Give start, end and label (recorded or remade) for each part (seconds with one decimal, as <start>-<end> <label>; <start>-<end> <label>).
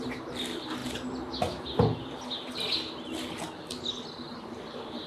0.0-5.1 recorded